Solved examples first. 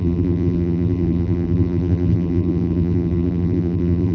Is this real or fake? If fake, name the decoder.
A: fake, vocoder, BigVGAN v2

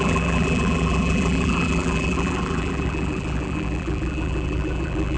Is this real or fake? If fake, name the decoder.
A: fake, vocoder, BigVGAN v2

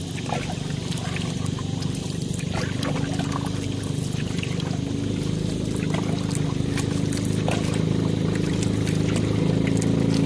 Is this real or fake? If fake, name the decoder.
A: real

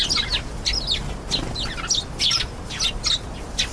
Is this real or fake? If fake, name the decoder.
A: real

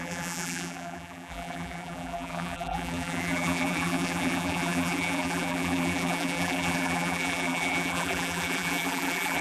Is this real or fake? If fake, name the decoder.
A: fake, vocoder, BigVGAN v2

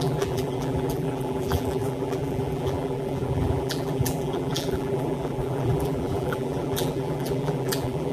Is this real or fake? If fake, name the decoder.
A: fake, vocoder, BigVGAN v2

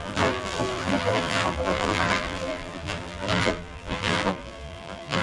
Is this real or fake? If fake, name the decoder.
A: fake, vocoder, BigVGAN v2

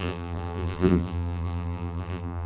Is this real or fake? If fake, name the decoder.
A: fake, vocoder, BigVGAN v2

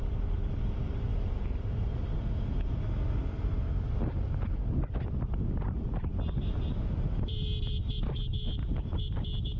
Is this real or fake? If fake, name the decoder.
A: fake, vocoder, BigVGAN v2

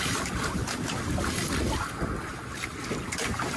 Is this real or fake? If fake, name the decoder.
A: real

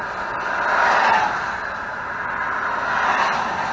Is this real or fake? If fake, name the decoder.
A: real